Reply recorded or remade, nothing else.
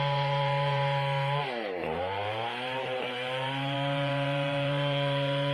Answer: remade